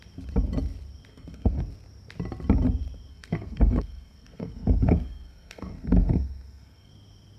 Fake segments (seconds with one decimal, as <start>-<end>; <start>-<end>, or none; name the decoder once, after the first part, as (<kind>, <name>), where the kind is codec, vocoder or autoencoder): 1.1-1.6 (codec, SNAC); 3.1-6.9